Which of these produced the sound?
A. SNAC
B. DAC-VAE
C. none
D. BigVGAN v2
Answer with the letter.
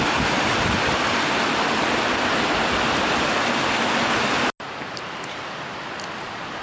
C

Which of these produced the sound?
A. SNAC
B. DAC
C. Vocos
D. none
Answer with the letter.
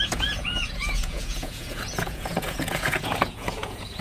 C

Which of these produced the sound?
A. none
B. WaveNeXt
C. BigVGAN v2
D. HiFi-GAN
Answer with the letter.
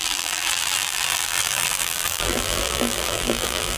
C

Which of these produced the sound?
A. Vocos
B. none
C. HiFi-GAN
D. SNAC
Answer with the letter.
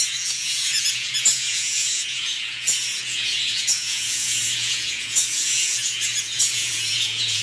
A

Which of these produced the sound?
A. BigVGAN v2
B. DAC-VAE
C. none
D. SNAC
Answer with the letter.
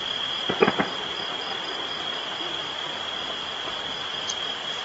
C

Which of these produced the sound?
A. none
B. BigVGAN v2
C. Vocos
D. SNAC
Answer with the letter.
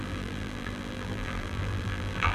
B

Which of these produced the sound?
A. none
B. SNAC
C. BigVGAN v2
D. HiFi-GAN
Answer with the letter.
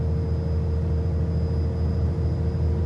A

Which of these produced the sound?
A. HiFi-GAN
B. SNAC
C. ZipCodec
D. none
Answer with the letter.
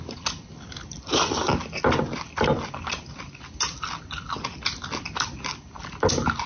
D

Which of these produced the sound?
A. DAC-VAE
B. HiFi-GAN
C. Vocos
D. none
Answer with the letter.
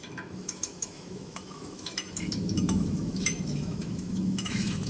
A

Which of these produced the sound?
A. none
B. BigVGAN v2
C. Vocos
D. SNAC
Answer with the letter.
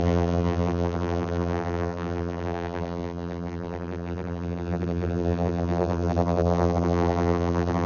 B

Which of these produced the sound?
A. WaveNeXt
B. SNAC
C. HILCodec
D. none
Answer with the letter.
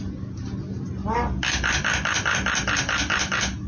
D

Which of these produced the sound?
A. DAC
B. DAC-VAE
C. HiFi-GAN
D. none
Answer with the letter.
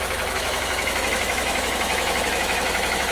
B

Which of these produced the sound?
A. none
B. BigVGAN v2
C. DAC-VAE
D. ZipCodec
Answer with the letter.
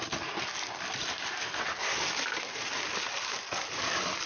A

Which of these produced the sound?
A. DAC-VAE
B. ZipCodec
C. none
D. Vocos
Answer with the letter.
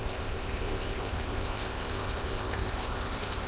B